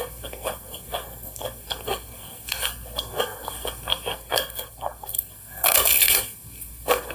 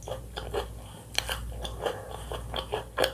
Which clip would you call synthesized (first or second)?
first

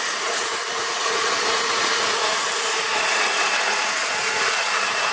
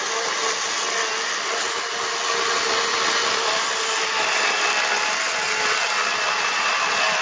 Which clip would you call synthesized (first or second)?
first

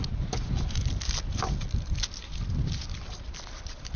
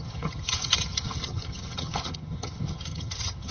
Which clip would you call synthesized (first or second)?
second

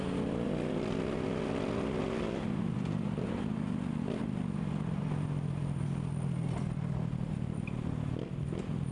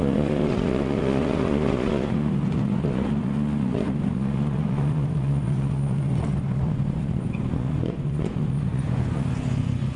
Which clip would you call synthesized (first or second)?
second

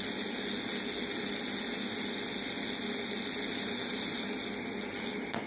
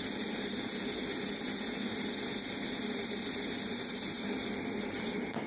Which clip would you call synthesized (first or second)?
second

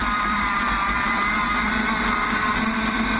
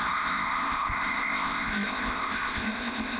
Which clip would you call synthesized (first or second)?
second